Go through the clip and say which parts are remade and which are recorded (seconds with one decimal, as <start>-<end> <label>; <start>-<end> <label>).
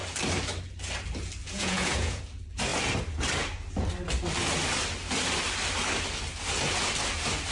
0.0-1.4 recorded; 1.4-2.2 remade; 2.2-7.5 recorded